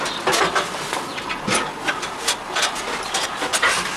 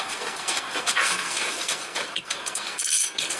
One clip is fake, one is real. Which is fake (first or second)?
second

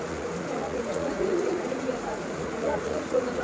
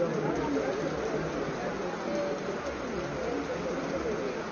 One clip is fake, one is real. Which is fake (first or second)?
first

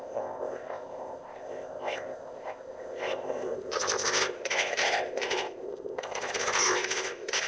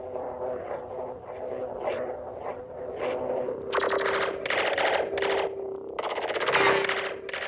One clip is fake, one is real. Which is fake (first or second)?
first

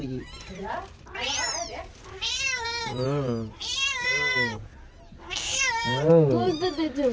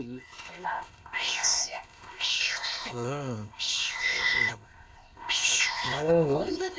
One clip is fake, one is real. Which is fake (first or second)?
second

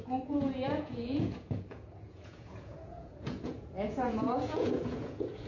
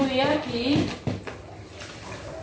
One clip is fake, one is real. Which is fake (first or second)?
first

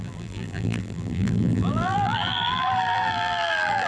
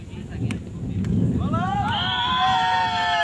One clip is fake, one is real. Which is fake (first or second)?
first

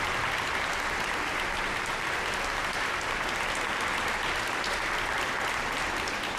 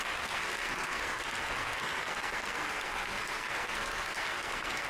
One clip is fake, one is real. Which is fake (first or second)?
second